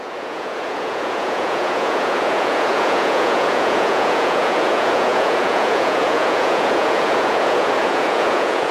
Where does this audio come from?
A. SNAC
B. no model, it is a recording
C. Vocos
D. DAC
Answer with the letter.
C